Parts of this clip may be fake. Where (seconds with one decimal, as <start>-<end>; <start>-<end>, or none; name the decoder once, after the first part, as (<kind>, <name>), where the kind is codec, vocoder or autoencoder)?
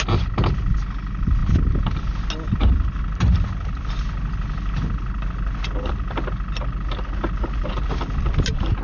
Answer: none